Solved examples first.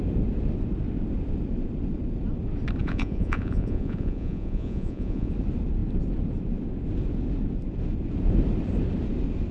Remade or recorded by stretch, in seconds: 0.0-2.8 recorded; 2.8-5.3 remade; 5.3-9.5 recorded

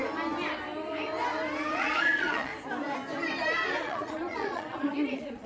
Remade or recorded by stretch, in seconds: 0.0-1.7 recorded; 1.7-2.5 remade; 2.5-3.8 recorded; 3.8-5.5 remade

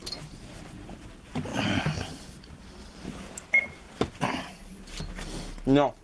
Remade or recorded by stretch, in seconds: 0.0-6.0 recorded

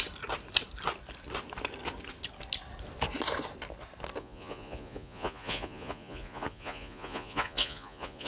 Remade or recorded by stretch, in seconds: 0.0-4.2 recorded; 4.2-8.3 remade